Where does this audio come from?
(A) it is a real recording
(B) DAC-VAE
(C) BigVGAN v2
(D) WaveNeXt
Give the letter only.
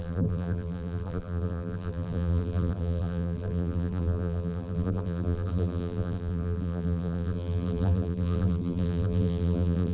C